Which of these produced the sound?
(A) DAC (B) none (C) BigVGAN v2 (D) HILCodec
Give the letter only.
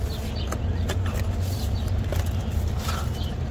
B